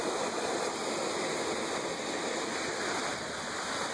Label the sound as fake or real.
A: real